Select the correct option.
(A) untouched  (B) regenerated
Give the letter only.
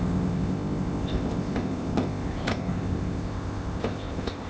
B